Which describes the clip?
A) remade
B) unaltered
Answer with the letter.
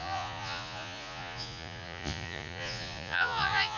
A